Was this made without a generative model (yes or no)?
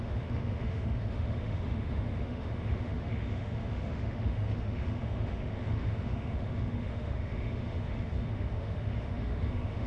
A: no